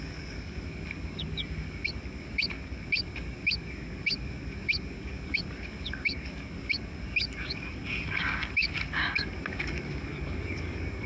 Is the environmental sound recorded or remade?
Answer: remade